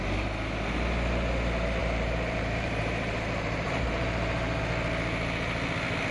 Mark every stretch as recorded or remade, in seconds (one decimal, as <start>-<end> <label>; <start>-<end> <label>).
0.0-1.8 recorded; 1.8-4.6 remade; 4.6-6.1 recorded